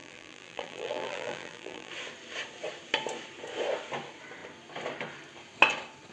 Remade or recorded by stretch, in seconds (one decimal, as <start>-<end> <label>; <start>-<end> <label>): 0.0-1.9 remade; 1.9-6.1 recorded